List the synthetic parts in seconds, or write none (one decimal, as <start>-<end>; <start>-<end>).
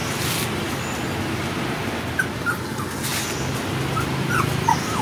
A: none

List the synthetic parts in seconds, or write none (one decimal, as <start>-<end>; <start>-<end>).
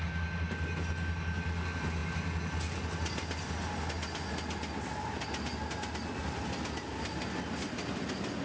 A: none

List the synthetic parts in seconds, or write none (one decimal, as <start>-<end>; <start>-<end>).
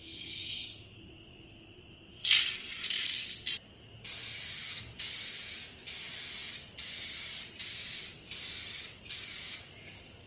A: none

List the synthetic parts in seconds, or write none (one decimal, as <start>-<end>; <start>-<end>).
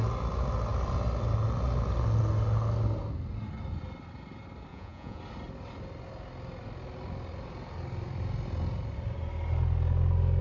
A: 4.7-5.2